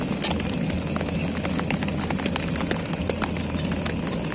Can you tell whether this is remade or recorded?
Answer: recorded